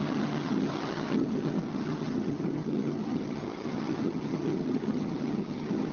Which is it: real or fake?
fake